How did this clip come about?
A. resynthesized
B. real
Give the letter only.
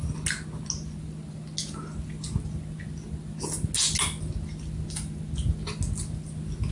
B